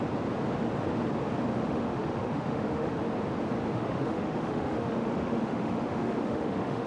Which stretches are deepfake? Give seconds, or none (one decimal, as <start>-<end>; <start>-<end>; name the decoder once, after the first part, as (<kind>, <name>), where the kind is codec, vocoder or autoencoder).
1.5-3.0 (autoencoder, DAC-VAE); 3.7-6.9